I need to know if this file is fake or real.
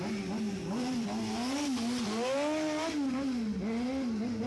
real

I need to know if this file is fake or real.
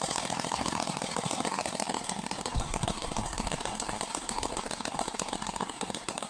fake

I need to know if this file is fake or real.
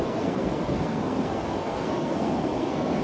fake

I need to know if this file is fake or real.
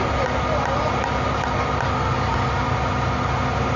real